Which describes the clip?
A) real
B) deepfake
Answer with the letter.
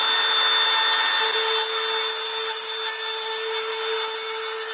A